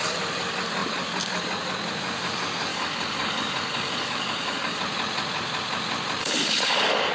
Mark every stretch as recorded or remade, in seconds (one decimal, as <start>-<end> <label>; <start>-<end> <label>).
0.0-2.7 recorded; 2.7-4.8 remade; 4.8-6.2 recorded; 6.2-7.1 remade